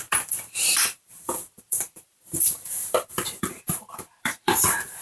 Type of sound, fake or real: fake